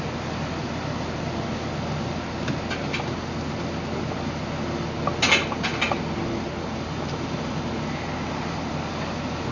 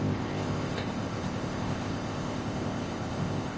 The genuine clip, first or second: first